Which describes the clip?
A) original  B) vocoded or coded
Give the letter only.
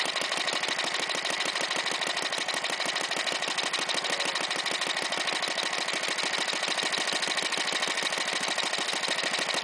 A